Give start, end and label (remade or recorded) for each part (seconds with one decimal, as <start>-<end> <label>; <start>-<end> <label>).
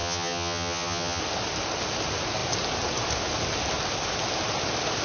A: 0.0-1.2 remade; 1.2-5.0 recorded